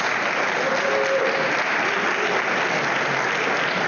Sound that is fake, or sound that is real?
real